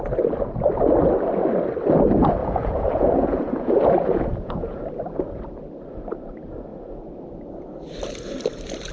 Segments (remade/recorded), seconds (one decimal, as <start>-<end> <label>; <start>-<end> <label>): 0.0-2.4 recorded; 2.4-4.8 remade; 4.8-8.9 recorded